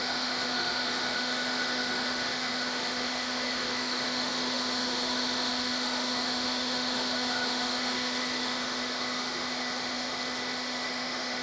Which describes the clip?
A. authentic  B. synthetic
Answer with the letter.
B